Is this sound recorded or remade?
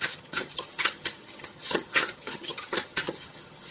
remade